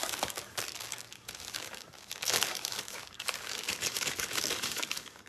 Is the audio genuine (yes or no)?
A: no